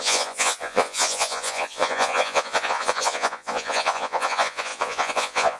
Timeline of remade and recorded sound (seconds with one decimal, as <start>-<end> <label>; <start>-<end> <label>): 0.0-5.6 remade